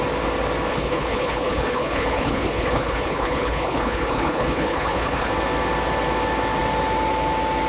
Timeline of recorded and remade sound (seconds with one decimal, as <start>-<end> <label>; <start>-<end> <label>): 0.0-0.7 recorded; 0.7-5.3 remade; 5.3-7.7 recorded